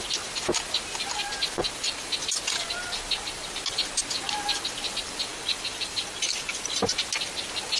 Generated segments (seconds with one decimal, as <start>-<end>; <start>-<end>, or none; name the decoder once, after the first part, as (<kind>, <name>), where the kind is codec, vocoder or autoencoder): 5.3-6.6 (vocoder, BigVGAN v2)